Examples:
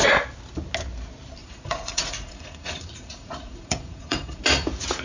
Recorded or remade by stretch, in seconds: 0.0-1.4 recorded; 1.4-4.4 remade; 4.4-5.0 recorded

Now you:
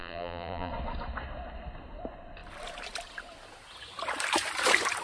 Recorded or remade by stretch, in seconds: 0.0-0.7 remade; 0.7-5.0 recorded

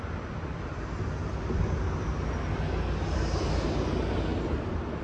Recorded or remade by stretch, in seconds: 0.0-3.0 recorded; 3.0-3.9 remade; 3.9-5.0 recorded

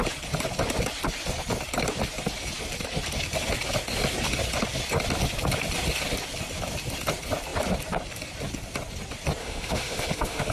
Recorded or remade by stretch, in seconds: 0.0-9.4 recorded; 9.4-10.5 remade

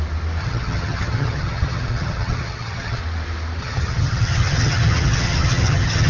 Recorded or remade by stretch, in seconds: 0.0-0.4 recorded; 0.4-3.0 remade; 3.0-3.6 recorded; 3.6-6.1 remade

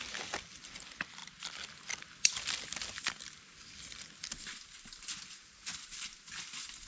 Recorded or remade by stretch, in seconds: 0.0-6.9 recorded

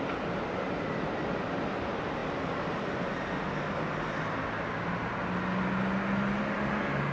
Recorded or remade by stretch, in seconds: 0.0-7.1 recorded